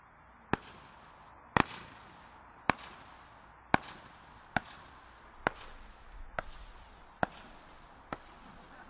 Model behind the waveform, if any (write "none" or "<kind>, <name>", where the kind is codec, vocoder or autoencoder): none